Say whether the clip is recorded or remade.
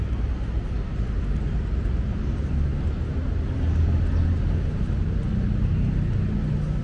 recorded